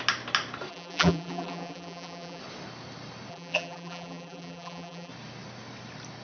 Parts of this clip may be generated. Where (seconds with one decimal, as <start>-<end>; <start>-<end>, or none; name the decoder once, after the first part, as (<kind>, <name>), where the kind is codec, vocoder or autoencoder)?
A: 0.7-2.4 (vocoder, BigVGAN v2); 3.3-5.1